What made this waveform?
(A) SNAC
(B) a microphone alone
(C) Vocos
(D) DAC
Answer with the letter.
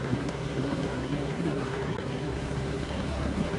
A